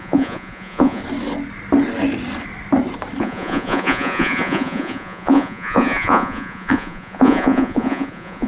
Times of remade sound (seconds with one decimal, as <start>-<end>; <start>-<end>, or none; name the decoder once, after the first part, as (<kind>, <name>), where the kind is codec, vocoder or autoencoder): 0.0-1.0 (vocoder, Vocos); 3.2-8.5